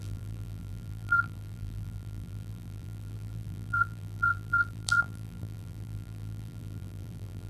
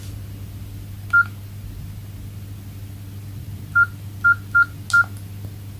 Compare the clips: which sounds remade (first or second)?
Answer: first